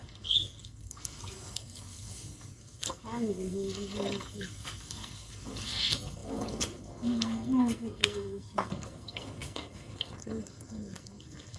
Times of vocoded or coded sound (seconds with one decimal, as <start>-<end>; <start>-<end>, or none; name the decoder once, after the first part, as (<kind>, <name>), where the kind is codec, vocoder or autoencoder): 0.0-11.6 (codec, SNAC)